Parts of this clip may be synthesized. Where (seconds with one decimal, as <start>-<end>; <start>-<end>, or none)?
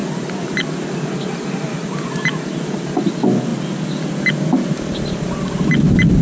none